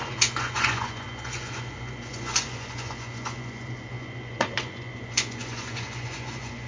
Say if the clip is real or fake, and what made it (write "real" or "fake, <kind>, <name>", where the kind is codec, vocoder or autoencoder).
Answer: fake, vocoder, Vocos